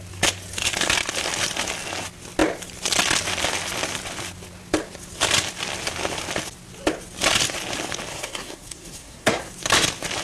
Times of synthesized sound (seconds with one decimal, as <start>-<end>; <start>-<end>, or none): 8.1-9.5